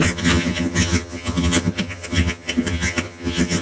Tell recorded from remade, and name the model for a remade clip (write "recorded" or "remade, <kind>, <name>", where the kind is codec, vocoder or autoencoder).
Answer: remade, vocoder, HiFi-GAN